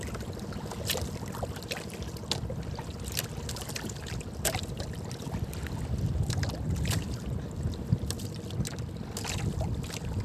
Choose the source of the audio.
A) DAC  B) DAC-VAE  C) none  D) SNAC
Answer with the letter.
C